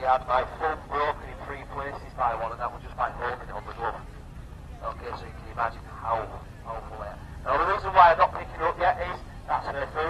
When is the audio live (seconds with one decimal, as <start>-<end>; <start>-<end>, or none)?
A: 0.0-0.7; 5.7-10.1